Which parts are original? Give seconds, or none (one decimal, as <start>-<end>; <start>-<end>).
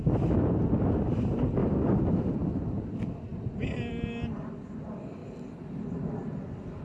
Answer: 0.0-1.6; 2.3-6.8